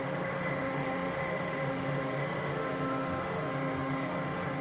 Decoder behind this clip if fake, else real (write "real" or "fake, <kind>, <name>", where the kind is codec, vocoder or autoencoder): fake, autoencoder, DAC-VAE